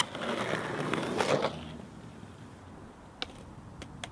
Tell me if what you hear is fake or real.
real